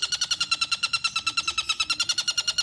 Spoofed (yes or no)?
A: no